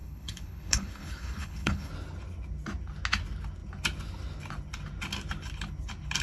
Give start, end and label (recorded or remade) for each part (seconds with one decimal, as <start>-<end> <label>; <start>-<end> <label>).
0.0-1.9 remade; 1.9-6.2 recorded